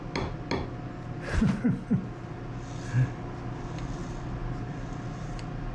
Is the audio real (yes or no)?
yes